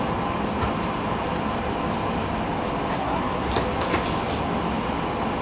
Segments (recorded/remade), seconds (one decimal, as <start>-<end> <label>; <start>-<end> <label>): 0.0-2.9 recorded; 2.9-3.5 remade; 3.5-5.4 recorded